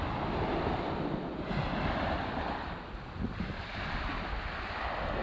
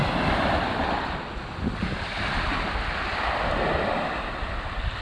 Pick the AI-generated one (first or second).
second